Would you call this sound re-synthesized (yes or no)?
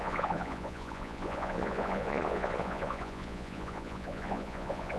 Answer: yes